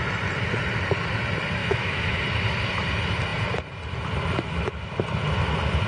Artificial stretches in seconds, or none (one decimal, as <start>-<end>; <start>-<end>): 1.6-2.2